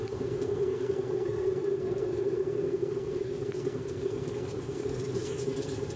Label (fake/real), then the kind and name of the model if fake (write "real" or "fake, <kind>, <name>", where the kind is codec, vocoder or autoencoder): fake, codec, SNAC